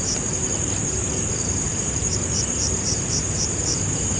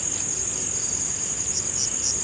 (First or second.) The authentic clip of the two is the second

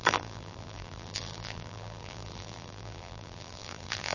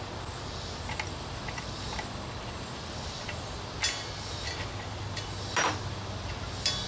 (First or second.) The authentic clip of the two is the second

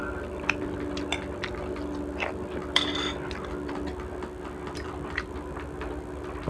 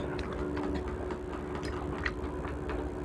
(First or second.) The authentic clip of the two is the second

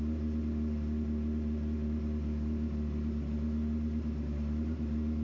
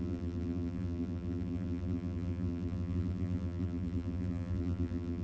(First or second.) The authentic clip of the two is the first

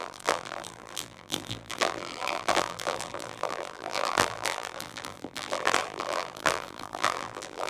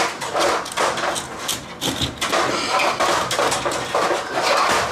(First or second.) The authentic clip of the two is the second